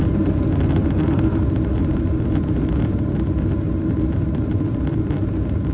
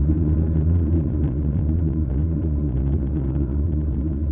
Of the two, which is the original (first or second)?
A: first